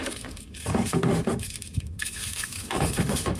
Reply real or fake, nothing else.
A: fake